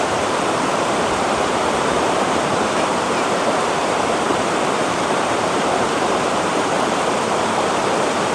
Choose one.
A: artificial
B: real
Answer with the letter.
A